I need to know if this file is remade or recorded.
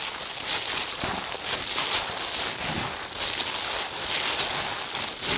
recorded